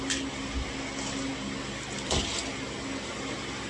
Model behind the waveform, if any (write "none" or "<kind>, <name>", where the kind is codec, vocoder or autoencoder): none